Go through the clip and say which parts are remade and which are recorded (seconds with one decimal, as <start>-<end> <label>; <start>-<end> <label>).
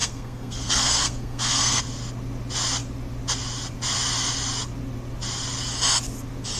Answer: 0.0-1.8 remade; 1.8-6.6 recorded